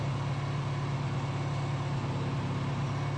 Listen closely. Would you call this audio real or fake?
real